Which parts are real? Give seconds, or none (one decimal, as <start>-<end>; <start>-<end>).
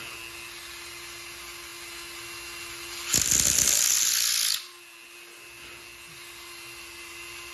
0.0-7.5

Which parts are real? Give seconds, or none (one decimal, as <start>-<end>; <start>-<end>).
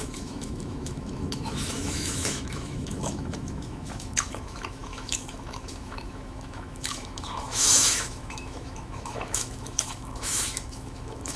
none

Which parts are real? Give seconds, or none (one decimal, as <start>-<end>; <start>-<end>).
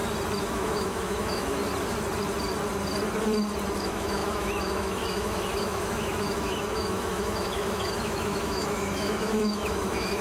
0.0-0.5; 1.6-3.8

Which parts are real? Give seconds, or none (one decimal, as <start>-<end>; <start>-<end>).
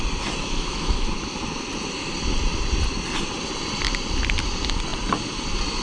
0.0-0.4; 1.2-5.8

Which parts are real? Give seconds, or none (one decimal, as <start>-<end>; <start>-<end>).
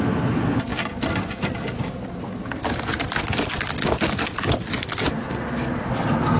0.0-6.4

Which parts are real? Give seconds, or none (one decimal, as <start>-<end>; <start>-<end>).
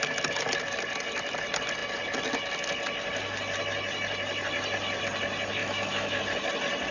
0.0-5.6; 6.2-6.9